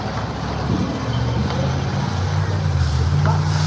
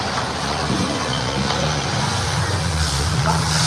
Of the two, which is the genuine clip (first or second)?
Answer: first